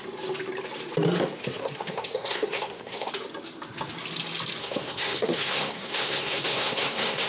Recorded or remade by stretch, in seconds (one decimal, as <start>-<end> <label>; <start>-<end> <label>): 0.0-1.4 recorded; 1.4-3.1 remade; 3.1-4.6 recorded; 4.6-7.3 remade